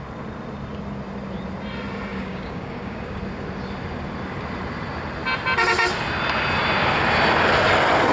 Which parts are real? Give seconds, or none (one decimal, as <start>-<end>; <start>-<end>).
0.0-2.1; 3.2-8.1